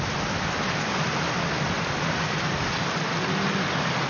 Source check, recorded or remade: recorded